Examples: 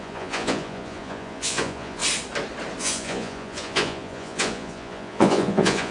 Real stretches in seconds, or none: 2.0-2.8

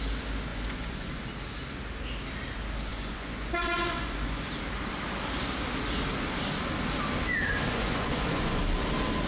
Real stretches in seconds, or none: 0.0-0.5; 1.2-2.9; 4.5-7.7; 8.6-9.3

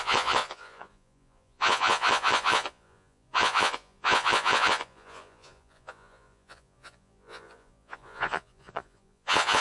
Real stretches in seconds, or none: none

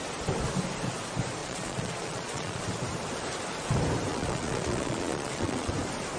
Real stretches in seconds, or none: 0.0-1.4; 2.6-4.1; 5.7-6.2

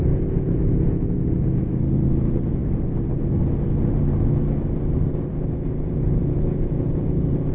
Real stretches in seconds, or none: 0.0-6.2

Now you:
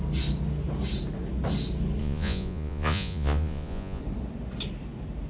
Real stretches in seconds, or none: 0.0-2.0; 4.0-5.3

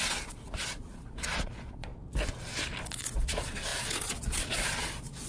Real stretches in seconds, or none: 1.9-2.8

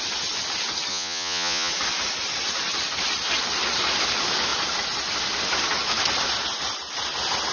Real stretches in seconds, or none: 0.0-0.9; 1.7-7.5